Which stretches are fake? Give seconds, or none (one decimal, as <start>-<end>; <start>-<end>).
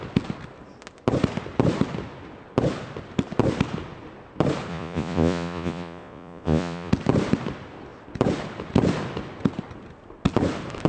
4.7-6.9